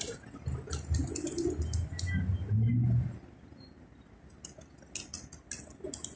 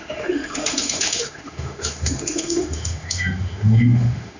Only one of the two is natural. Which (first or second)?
first